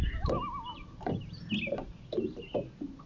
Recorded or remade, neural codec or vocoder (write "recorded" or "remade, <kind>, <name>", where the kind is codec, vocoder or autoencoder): recorded